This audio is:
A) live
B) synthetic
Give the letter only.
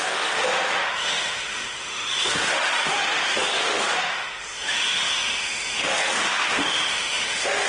B